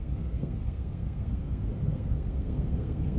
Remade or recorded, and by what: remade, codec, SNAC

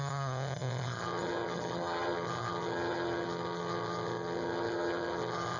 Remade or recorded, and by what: remade, vocoder, HiFi-GAN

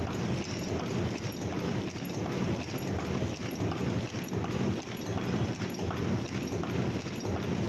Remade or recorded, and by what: recorded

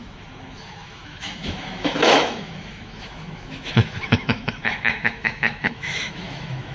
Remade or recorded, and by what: remade, autoencoder, DAC-VAE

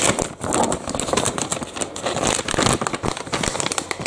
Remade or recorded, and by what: recorded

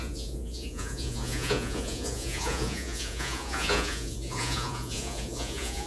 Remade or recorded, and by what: remade, vocoder, Vocos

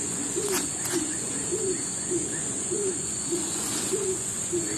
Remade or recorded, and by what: remade, vocoder, Vocos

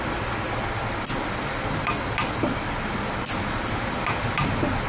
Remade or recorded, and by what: recorded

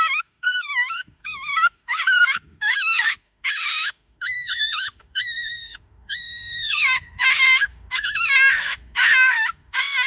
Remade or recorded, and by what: remade, autoencoder, DAC-VAE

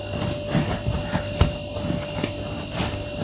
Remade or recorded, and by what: recorded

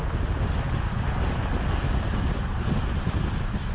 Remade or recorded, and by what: recorded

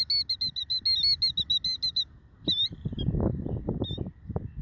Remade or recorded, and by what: recorded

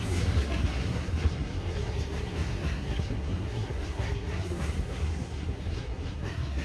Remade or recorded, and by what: remade, codec, SNAC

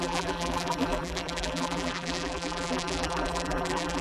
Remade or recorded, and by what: remade, vocoder, BigVGAN v2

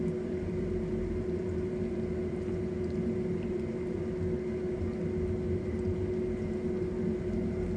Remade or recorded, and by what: recorded